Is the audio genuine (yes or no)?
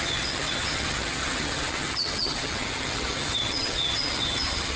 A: no